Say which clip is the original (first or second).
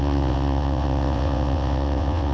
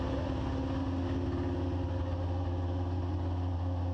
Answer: second